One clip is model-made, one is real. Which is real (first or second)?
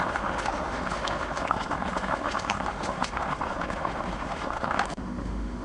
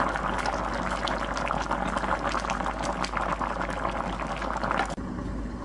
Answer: second